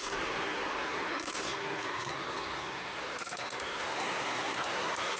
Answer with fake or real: fake